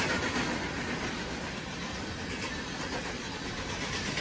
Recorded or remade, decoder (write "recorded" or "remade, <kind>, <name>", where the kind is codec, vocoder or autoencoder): recorded